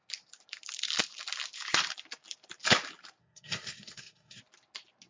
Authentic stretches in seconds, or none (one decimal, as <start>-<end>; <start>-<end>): 0.0-3.2; 4.4-5.1

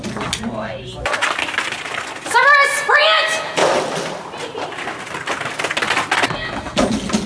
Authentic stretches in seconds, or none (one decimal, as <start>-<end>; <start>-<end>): 0.0-7.3

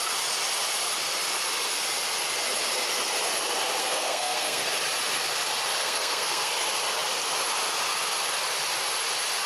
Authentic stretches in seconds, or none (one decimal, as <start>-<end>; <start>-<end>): 0.0-3.8; 4.7-5.8; 6.5-9.5

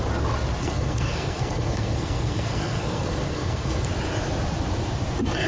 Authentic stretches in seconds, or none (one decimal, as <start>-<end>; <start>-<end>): 0.0-0.6; 3.9-5.5

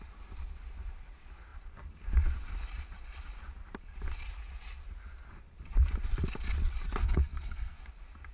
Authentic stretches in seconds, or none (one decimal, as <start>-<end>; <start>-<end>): 0.0-7.0; 7.8-8.3

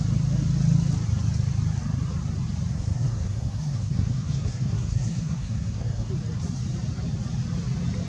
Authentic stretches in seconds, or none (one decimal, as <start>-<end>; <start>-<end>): 0.0-2.7; 6.1-8.1